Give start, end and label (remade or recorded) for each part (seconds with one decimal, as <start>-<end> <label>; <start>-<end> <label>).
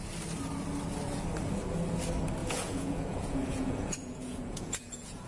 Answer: 0.0-2.4 recorded; 2.4-5.3 remade